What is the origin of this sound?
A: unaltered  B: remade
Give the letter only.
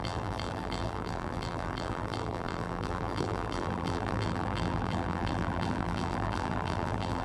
B